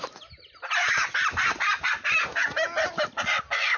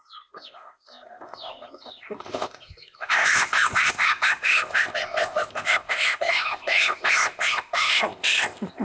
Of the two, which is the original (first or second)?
first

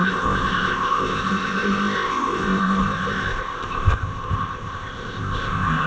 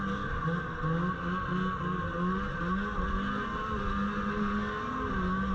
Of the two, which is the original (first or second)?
second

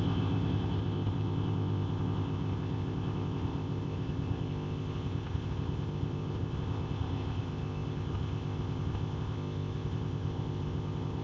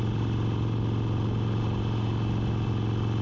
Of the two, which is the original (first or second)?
second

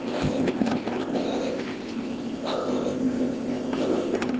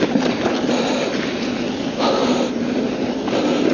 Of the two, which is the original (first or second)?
second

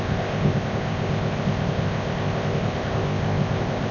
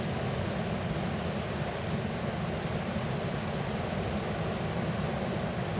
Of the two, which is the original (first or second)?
second